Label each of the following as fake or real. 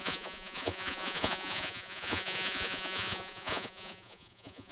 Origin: fake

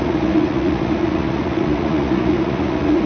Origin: fake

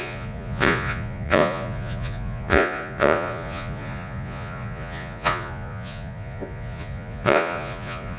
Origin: fake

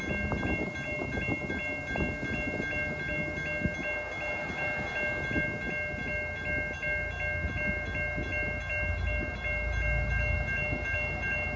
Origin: real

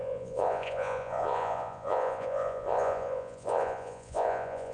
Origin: fake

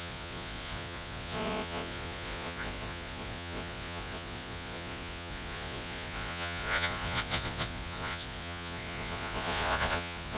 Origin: fake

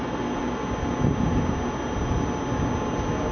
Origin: real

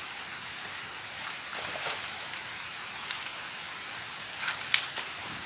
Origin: real